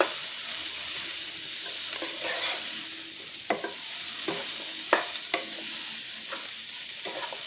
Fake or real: fake